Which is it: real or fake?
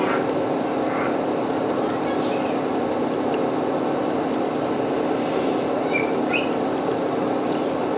real